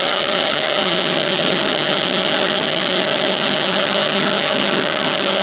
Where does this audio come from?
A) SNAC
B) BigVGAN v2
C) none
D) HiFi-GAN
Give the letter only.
D